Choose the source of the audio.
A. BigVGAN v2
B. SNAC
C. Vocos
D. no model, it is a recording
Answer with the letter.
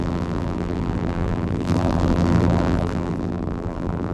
A